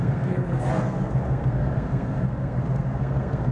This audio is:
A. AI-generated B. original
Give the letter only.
A